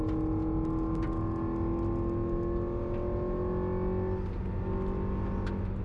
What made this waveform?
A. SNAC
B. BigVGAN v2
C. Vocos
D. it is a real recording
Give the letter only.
D